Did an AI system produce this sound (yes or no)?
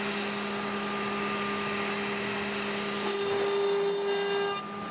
no